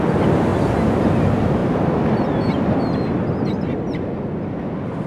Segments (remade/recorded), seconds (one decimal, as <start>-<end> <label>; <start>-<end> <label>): 0.0-5.1 recorded